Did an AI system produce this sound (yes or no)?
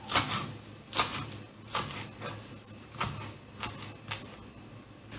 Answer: no